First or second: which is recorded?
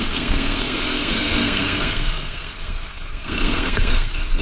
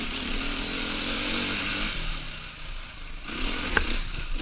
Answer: second